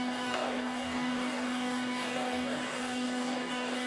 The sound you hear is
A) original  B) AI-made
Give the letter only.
B